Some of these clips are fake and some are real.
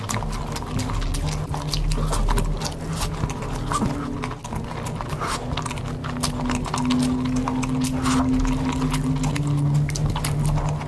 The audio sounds real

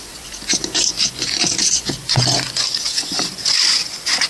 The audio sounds fake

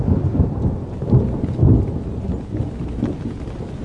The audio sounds real